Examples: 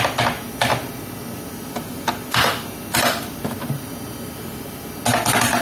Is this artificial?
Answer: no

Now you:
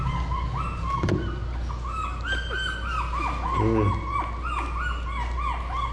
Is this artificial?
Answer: no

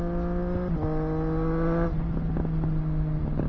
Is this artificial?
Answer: no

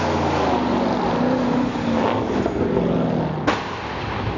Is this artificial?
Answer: no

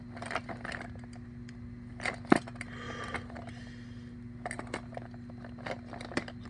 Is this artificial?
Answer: no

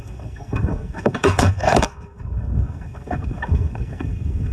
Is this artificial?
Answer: yes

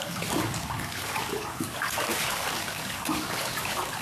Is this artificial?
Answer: yes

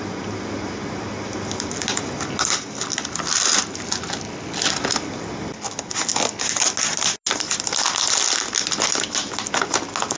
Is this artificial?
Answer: no